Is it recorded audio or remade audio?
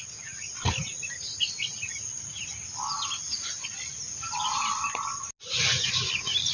recorded